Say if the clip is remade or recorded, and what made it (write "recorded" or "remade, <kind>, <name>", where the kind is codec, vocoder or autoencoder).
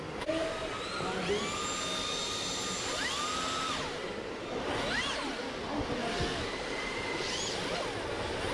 recorded